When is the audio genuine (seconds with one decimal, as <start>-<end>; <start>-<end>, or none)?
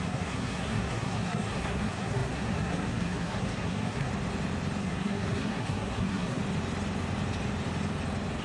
4.1-4.8; 6.4-8.4